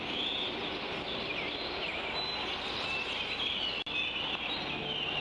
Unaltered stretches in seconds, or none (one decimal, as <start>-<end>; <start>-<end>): 0.0-5.2